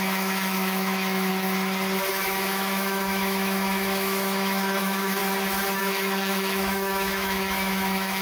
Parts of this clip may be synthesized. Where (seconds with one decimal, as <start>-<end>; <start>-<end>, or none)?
0.0-1.3; 2.1-5.2; 5.8-8.2